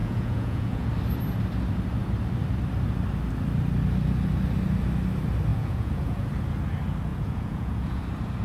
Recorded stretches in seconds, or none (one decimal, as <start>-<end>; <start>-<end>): 0.9-5.5; 6.3-7.1; 8.0-8.4